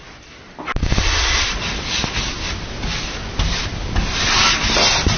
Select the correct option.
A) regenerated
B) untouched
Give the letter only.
B